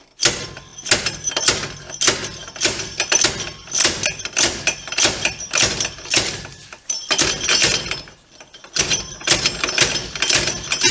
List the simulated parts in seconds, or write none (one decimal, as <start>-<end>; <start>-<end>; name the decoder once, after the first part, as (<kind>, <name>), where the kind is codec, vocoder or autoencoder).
2.4-3.3 (vocoder, BigVGAN v2); 3.8-8.8; 10.0-10.9